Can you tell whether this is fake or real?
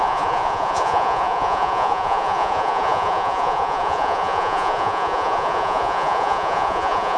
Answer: fake